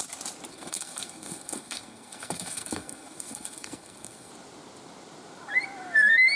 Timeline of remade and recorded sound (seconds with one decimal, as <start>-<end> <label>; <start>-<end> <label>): 0.0-0.5 recorded; 0.5-4.3 remade; 4.3-6.4 recorded